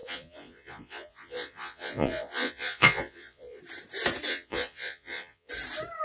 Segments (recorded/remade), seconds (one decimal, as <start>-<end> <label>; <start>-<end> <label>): 0.0-3.6 remade; 3.6-4.3 recorded; 4.3-5.5 remade; 5.5-6.0 recorded